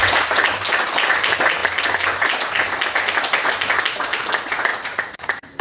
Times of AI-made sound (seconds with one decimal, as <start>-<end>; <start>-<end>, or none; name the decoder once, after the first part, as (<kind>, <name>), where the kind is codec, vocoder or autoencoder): 4.7-5.6 (vocoder, Vocos)

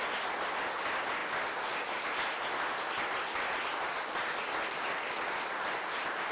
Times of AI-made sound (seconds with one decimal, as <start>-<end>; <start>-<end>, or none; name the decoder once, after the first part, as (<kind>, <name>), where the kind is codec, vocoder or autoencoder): none

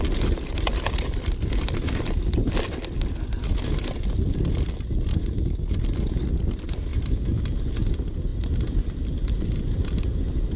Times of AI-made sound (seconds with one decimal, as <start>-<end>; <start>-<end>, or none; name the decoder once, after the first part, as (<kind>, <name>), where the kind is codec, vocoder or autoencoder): 6.9-7.6 (vocoder, BigVGAN v2)

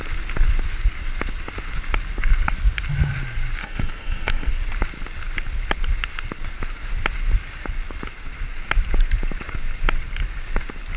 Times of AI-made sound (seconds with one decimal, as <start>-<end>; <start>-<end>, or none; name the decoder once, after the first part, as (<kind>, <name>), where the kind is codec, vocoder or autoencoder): 3.6-4.5 (codec, SNAC)

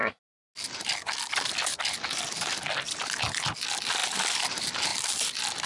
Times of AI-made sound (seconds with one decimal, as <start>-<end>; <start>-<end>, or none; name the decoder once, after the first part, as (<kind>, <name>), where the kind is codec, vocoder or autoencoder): none

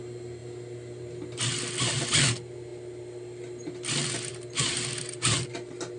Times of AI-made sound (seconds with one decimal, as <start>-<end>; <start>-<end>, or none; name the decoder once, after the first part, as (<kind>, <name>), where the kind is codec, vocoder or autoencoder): none

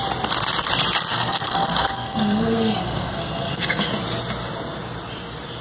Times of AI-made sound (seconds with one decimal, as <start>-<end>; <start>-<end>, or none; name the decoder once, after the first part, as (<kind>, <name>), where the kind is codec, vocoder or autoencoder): 1.1-3.9 (codec, SNAC)

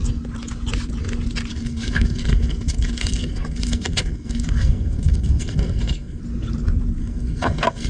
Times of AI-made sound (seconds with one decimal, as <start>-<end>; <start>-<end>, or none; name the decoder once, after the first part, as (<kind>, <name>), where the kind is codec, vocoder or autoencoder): 1.5-6.2 (codec, SNAC); 7.0-7.9